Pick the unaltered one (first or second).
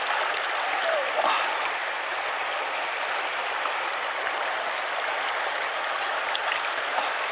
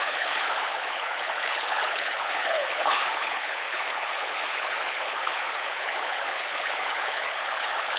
first